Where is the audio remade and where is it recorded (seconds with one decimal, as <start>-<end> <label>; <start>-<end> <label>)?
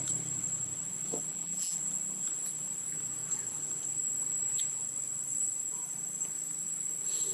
0.0-1.3 recorded; 1.3-1.8 remade; 1.8-7.3 recorded